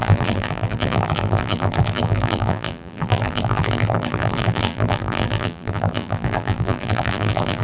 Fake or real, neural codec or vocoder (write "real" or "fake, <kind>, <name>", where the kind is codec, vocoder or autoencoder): fake, vocoder, BigVGAN v2